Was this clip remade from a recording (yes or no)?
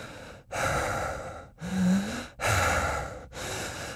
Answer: no